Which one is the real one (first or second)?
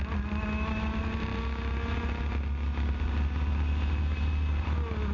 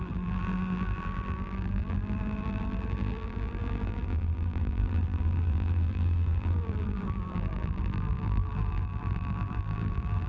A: first